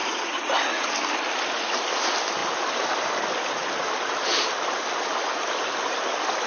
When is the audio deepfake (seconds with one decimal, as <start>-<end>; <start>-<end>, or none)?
0.0-0.9